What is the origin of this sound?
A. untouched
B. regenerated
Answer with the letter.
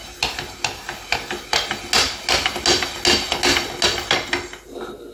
A